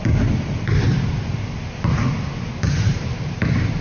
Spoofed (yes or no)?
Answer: no